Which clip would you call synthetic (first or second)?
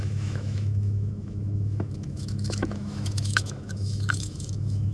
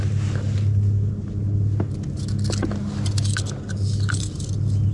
first